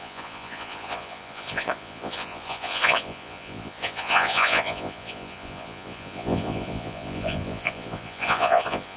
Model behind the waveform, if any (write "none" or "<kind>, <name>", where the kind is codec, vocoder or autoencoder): vocoder, Vocos